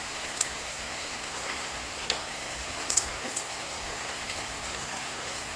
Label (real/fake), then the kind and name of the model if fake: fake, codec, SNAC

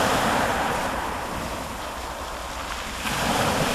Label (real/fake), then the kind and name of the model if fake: fake, vocoder, BigVGAN v2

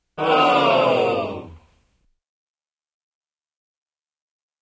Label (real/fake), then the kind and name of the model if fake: real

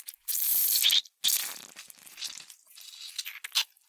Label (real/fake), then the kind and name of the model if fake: real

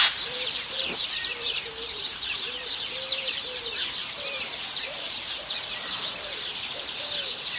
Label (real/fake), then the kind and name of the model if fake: fake, vocoder, BigVGAN v2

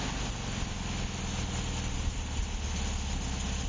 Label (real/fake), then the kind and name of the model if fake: real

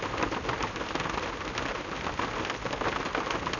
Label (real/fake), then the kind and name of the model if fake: real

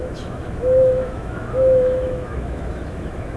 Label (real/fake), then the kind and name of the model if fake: fake, autoencoder, DAC-VAE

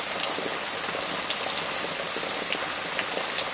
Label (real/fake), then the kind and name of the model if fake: real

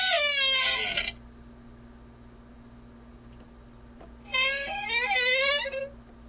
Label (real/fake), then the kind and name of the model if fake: real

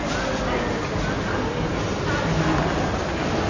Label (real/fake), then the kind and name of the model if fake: real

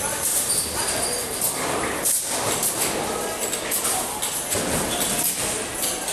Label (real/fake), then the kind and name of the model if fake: real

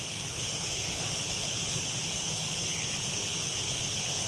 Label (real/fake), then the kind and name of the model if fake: fake, codec, HILCodec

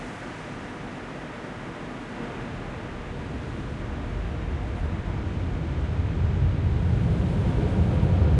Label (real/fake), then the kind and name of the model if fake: real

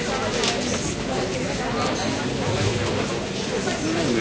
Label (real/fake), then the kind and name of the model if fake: real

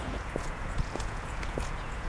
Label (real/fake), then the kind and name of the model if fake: fake, vocoder, Vocos